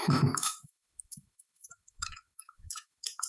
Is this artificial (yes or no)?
yes